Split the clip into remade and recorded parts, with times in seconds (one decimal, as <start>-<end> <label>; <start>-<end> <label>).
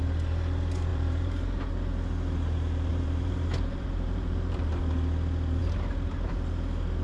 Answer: 0.0-0.9 recorded; 0.9-1.7 remade; 1.7-2.9 recorded; 2.9-4.7 remade; 4.7-7.0 recorded